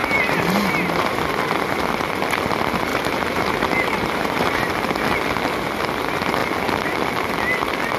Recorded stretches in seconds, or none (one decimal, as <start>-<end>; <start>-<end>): 1.2-2.9; 4.7-8.0